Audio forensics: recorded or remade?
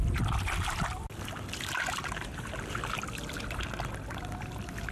recorded